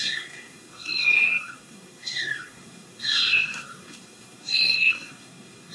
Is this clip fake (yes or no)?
yes